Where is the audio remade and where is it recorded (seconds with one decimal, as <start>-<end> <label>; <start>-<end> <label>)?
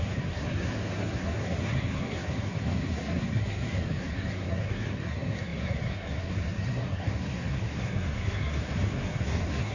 0.0-9.7 remade